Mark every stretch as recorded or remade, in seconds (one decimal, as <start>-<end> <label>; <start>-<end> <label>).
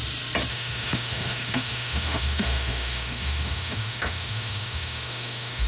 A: 0.0-0.5 recorded; 0.5-5.7 remade